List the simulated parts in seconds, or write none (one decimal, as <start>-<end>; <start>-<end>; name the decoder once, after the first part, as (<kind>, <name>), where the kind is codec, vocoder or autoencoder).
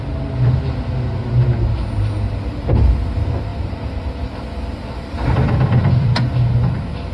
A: 3.5-4.3 (vocoder, BigVGAN v2); 4.8-6.1